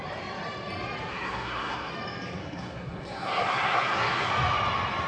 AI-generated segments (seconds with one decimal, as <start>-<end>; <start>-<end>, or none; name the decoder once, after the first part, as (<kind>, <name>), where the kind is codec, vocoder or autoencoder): 1.1-1.9 (codec, SNAC); 2.4-4.3